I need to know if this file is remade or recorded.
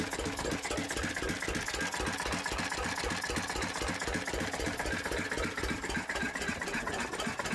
recorded